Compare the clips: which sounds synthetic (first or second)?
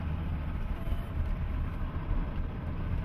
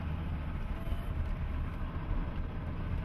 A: first